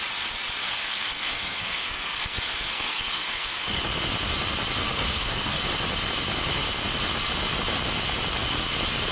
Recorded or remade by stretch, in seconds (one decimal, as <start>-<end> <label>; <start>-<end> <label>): 0.0-0.6 recorded; 0.6-3.8 remade; 3.8-4.8 recorded; 4.8-5.6 remade; 5.6-9.1 recorded